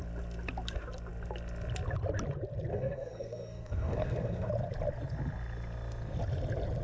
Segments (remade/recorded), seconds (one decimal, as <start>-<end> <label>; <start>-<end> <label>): 0.0-2.7 recorded; 2.7-4.5 remade; 4.5-6.8 recorded